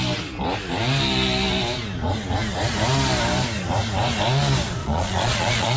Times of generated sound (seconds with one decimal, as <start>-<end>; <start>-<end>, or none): 4.8-5.8